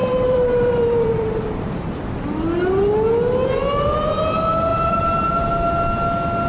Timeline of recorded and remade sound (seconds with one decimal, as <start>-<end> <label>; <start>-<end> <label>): 0.0-2.0 remade; 2.0-4.7 recorded; 4.7-5.3 remade; 5.3-6.5 recorded